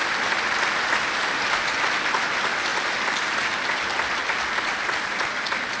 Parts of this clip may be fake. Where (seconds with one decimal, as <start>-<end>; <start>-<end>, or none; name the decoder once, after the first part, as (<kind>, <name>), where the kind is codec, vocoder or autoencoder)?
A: none